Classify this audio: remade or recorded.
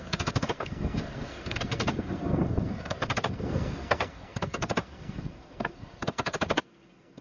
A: remade